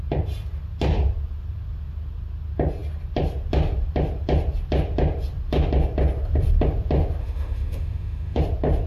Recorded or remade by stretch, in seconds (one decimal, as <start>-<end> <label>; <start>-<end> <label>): 0.0-7.2 recorded; 7.2-8.4 remade; 8.4-8.9 recorded

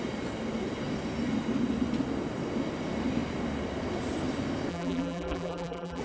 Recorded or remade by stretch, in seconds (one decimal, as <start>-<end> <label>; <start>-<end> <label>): 0.0-4.7 recorded; 4.7-6.0 remade

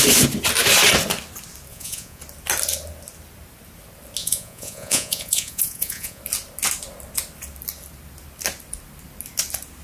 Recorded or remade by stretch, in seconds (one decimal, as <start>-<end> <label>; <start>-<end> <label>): 0.0-1.7 recorded; 1.7-2.2 remade; 2.2-4.2 recorded; 4.2-6.2 remade; 6.2-9.8 recorded

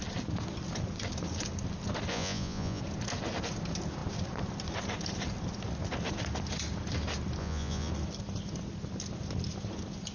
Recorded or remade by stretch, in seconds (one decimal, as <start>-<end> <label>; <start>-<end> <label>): 0.0-2.1 recorded; 2.1-2.8 remade; 2.8-7.4 recorded; 7.4-7.9 remade; 7.9-10.1 recorded

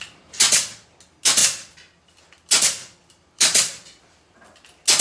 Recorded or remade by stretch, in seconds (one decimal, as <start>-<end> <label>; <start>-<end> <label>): 0.0-1.4 recorded; 1.4-4.4 remade; 4.4-5.0 recorded

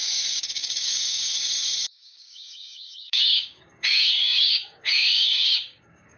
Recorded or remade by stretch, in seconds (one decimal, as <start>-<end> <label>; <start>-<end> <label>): 0.0-6.2 remade

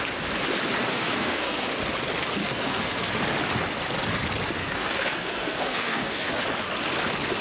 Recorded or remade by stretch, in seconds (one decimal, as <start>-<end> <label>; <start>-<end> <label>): 0.0-0.9 recorded; 0.9-1.7 remade; 1.7-2.4 recorded; 2.4-3.1 remade; 3.1-4.6 recorded; 4.6-6.3 remade; 6.3-7.4 recorded

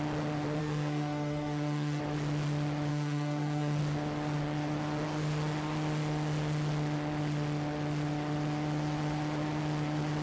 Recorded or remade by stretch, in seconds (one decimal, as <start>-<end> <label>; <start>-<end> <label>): 0.0-0.6 recorded; 0.6-2.0 remade; 2.0-2.9 recorded; 2.9-3.8 remade; 3.8-10.2 recorded